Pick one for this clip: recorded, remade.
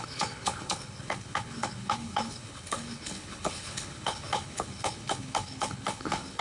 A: remade